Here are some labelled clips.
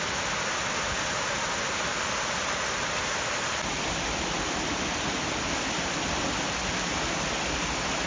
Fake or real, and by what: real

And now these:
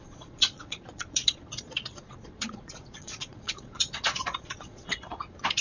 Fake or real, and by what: fake, vocoder, Vocos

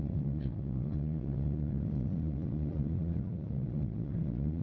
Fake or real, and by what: fake, vocoder, Vocos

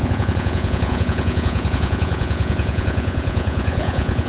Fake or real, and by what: fake, vocoder, Vocos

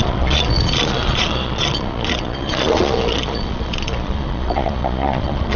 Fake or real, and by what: fake, vocoder, Vocos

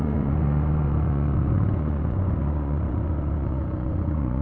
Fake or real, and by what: fake, vocoder, Vocos